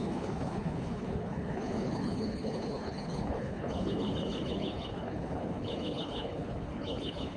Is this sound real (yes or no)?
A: no